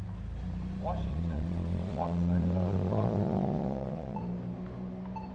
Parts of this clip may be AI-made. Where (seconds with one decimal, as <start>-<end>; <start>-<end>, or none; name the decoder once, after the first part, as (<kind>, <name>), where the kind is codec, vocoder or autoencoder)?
1.1-4.2 (vocoder, Vocos)